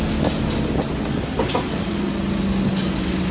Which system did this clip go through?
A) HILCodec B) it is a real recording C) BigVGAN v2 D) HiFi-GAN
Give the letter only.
B